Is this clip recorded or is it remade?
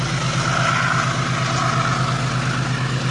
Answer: recorded